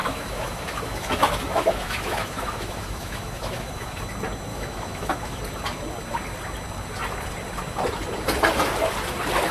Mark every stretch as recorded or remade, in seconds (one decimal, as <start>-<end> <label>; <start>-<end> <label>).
0.0-4.1 remade; 4.1-4.5 recorded; 4.5-5.4 remade; 5.4-9.5 recorded